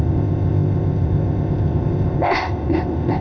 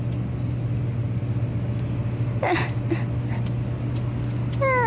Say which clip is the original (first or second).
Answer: second